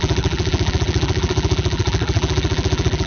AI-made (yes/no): yes